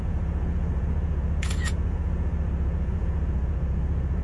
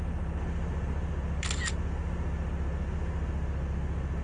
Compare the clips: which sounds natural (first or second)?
second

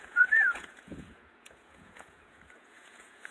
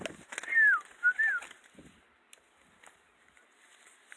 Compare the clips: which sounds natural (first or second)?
second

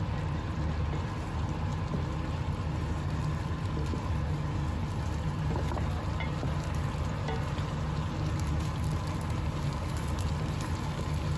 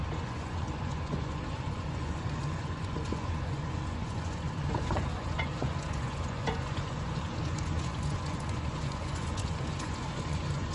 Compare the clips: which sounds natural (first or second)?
first